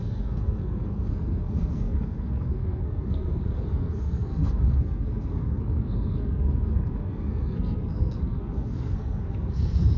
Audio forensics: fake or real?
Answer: fake